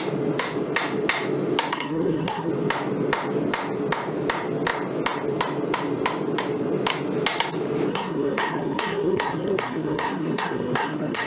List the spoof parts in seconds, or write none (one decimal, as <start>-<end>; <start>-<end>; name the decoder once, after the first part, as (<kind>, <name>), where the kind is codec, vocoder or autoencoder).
1.7-2.5 (codec, SNAC); 7.9-11.3